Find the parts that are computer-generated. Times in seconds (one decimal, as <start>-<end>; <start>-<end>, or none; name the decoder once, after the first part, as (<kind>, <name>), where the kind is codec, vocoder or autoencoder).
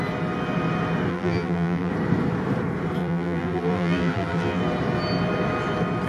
1.1-1.9 (vocoder, BigVGAN v2); 3.0-4.6